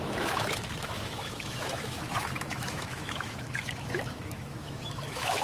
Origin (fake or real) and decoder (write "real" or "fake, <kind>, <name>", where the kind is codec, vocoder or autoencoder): fake, autoencoder, DAC-VAE